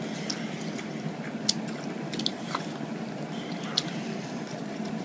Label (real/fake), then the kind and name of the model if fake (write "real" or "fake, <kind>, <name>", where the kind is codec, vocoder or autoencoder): real